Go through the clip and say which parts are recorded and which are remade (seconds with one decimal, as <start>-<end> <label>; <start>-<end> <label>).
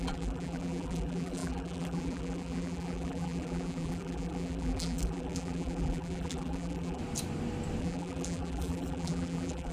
0.0-7.0 remade; 7.0-7.8 recorded; 7.8-9.7 remade